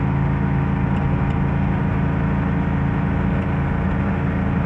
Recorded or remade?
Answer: recorded